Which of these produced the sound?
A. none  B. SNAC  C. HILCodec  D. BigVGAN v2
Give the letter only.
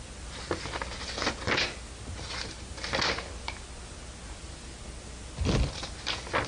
A